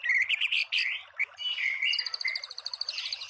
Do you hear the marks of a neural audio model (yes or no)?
no